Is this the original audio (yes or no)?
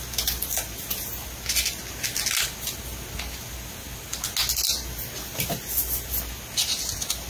yes